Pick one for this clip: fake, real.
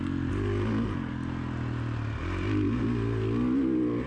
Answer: real